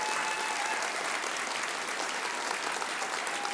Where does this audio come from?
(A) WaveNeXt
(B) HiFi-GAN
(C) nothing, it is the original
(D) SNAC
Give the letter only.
C